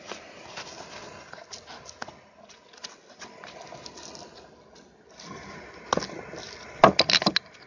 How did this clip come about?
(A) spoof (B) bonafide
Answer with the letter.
B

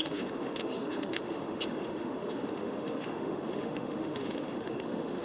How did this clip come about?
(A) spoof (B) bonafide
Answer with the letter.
A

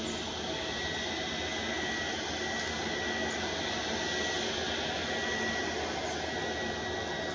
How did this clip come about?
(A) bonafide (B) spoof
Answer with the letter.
A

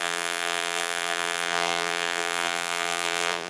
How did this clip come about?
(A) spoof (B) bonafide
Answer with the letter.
A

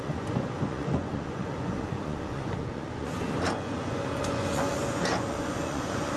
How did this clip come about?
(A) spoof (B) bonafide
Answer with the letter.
A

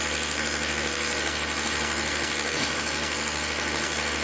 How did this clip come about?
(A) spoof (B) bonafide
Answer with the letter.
A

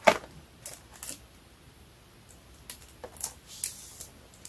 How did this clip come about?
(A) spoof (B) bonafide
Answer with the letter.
B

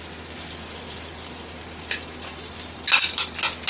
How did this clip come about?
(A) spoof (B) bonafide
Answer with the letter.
B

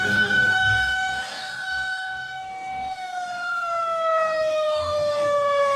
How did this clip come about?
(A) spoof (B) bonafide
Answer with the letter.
A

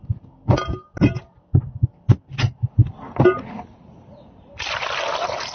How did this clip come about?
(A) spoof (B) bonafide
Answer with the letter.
B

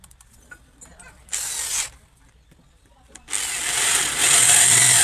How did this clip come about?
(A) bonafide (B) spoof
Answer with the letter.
A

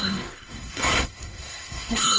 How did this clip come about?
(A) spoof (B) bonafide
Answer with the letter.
A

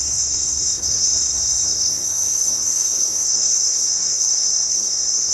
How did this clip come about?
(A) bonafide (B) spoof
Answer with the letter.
B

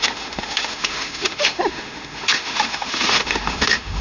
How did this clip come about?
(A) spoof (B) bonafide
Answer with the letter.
A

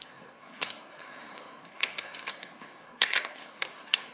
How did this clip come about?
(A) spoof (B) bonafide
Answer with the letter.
A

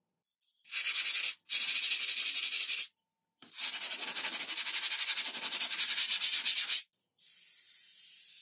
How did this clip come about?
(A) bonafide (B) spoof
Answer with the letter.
A